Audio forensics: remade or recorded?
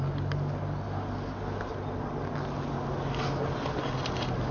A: recorded